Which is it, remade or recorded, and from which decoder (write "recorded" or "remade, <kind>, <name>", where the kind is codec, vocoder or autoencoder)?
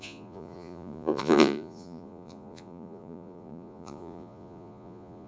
remade, vocoder, Vocos